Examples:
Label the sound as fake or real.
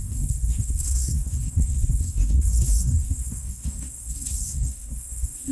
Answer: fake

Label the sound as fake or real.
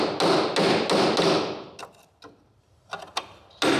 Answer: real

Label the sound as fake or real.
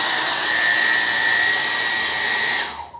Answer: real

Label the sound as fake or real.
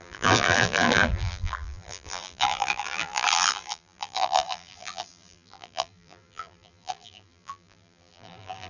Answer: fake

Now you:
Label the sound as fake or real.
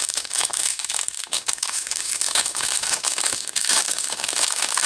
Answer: fake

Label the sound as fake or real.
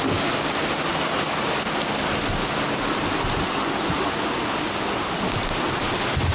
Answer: real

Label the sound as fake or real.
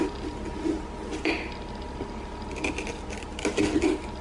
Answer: real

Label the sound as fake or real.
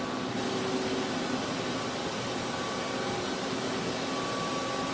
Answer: real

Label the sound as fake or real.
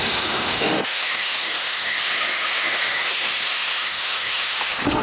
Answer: fake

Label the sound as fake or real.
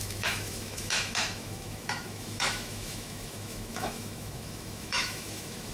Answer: fake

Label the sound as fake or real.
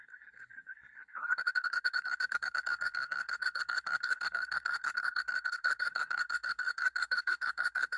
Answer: fake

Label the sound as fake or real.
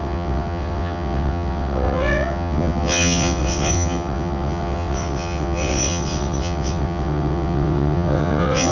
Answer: fake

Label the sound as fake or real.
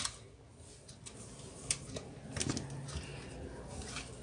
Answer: real